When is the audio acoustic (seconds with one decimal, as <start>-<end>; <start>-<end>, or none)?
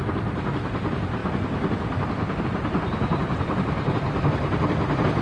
0.0-5.2